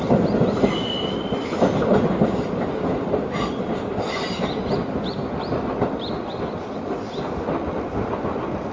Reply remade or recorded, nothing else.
recorded